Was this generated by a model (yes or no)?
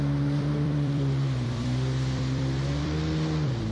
yes